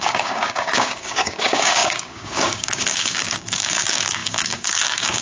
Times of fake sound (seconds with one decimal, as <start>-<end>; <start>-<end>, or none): 0.0-5.2